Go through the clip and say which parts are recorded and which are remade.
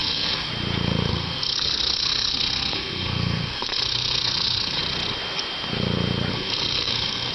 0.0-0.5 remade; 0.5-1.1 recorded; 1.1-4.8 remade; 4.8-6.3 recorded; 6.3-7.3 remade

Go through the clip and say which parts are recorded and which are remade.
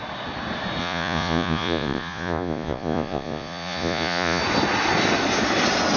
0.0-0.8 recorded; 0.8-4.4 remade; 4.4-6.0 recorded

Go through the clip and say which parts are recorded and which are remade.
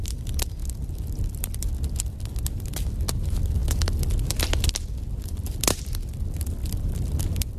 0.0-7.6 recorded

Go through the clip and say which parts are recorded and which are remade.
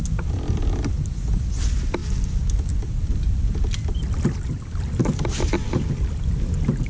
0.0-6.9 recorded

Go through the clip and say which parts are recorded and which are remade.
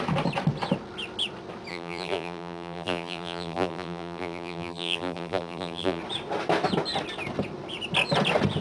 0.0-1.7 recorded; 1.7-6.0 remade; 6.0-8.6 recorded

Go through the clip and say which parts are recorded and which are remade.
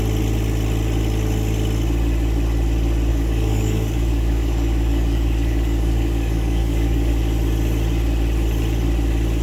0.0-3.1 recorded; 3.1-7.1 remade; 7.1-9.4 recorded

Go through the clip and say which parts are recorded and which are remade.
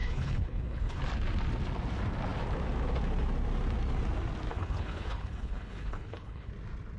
0.0-1.0 remade; 1.0-4.5 recorded; 4.5-6.5 remade; 6.5-7.0 recorded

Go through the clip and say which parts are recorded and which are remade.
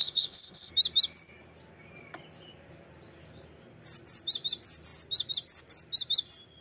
0.0-0.7 remade; 0.7-6.6 recorded